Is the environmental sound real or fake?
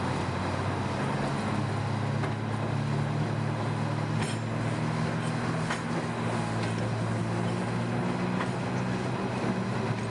real